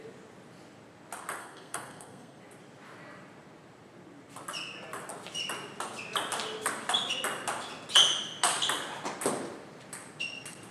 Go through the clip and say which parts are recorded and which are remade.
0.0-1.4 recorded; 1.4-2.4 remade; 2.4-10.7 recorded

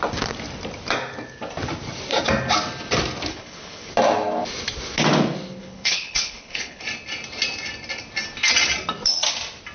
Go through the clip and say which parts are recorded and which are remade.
0.0-3.3 recorded; 3.3-3.9 remade; 3.9-5.6 recorded; 5.6-6.8 remade; 6.8-9.7 recorded

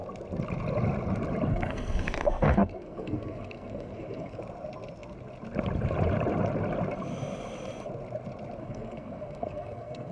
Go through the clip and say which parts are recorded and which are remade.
0.0-1.5 recorded; 1.5-4.4 remade; 4.4-8.6 recorded; 8.6-10.1 remade

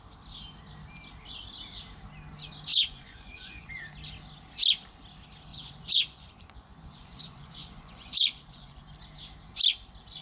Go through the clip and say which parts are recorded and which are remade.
0.0-2.7 recorded; 2.7-3.7 remade; 3.7-5.5 recorded; 5.5-8.8 remade; 8.8-10.2 recorded

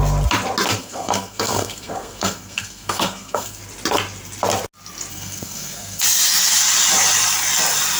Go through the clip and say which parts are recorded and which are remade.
0.0-0.8 recorded; 0.8-3.6 remade; 3.6-5.1 recorded; 5.1-6.0 remade; 6.0-8.0 recorded

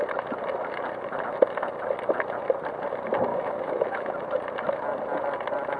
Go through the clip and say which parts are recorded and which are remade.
0.0-3.3 recorded; 3.3-4.1 remade; 4.1-5.8 recorded